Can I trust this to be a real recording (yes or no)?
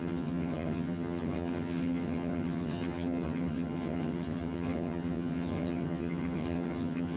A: no